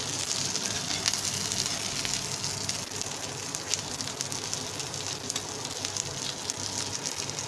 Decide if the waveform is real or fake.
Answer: real